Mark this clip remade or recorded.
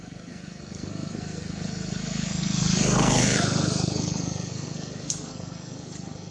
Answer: remade